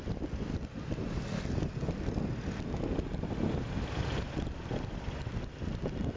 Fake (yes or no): no